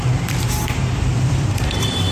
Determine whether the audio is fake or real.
fake